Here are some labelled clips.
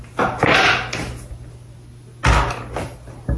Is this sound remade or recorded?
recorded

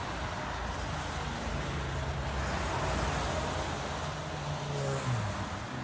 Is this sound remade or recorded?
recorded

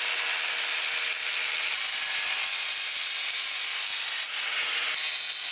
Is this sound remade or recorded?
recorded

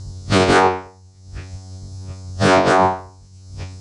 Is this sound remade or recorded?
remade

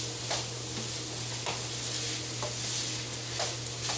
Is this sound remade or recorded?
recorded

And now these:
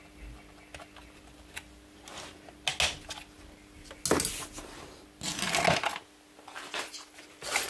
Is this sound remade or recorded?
recorded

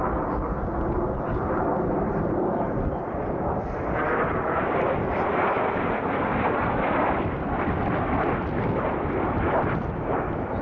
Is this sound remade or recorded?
recorded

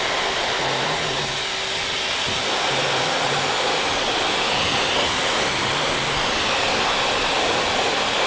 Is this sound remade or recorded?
recorded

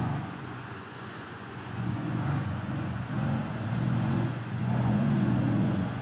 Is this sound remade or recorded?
remade